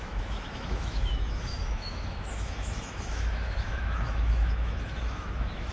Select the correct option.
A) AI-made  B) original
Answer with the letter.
A